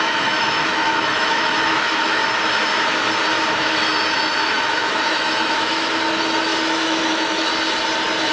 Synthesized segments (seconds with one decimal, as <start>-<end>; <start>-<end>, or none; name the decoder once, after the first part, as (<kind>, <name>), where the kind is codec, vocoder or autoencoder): 0.0-2.2 (autoencoder, DAC-VAE); 3.5-7.5